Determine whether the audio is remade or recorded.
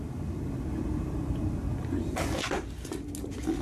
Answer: recorded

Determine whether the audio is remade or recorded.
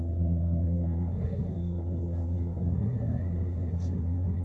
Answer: remade